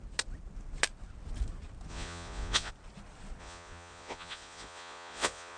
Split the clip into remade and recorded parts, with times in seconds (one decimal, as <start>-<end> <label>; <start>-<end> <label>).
0.0-1.9 recorded; 1.9-2.7 remade; 2.7-3.4 recorded; 3.4-5.6 remade